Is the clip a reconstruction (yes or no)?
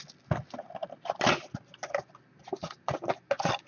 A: no